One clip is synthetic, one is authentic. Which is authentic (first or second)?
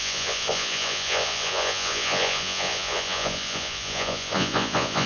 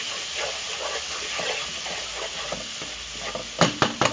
second